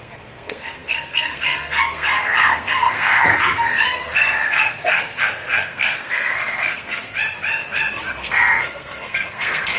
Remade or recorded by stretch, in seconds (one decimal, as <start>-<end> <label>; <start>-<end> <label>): 0.0-7.1 remade; 7.1-8.1 recorded; 8.1-9.8 remade